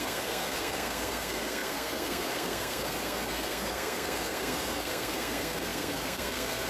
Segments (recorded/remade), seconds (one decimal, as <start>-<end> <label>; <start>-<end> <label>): 0.0-6.7 remade